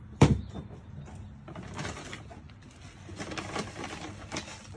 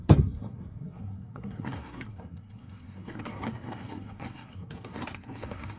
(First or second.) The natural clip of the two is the first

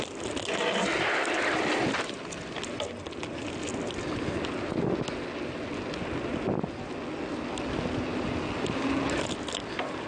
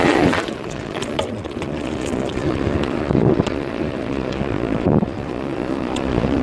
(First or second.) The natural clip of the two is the first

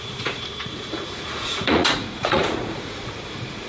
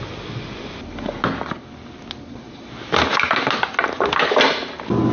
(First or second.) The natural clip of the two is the second